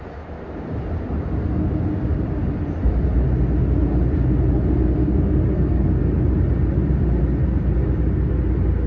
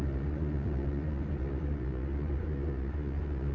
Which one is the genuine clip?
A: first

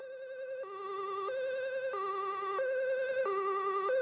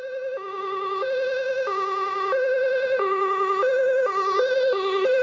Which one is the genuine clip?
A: first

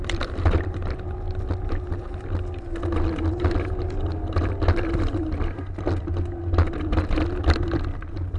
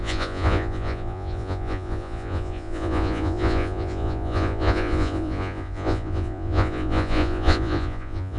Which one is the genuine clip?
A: first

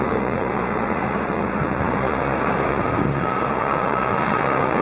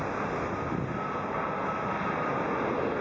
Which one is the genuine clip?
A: second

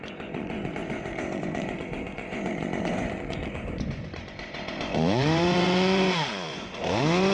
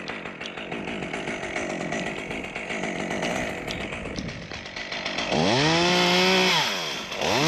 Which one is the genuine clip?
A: second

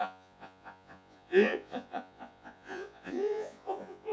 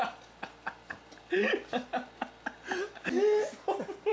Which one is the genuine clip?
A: second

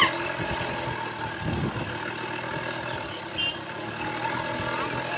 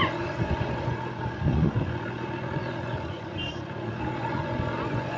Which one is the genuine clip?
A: first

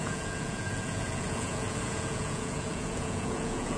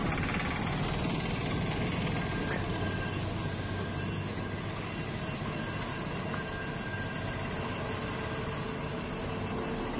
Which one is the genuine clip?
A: second